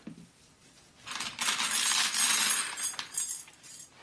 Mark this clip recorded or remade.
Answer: recorded